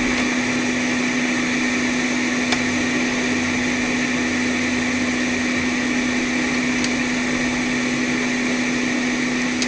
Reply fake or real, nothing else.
real